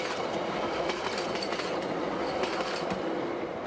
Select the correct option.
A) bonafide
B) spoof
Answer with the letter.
A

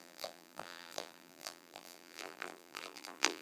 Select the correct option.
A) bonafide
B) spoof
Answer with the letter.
B